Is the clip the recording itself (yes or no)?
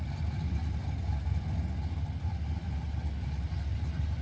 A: yes